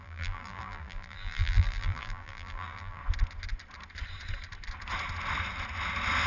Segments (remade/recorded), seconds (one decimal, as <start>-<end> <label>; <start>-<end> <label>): 0.0-3.0 remade; 3.0-6.3 recorded